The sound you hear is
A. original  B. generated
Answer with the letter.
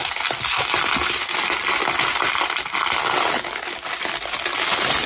A